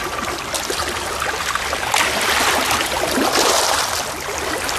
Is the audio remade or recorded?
recorded